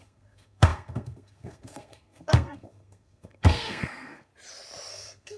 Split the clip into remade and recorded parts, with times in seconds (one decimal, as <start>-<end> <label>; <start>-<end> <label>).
0.0-4.3 remade; 4.3-4.9 recorded; 4.9-5.4 remade